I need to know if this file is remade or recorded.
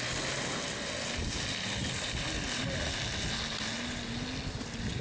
recorded